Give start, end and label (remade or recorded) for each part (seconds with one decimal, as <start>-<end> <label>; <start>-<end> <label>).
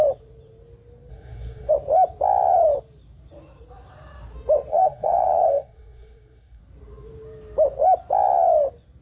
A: 0.0-1.1 recorded; 1.1-1.7 remade; 1.7-4.7 recorded; 4.7-6.6 remade; 6.6-9.0 recorded